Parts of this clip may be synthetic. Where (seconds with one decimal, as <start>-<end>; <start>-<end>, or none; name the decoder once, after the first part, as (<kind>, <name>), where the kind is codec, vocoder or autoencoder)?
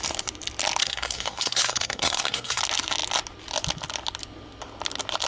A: 0.8-2.6 (codec, SNAC)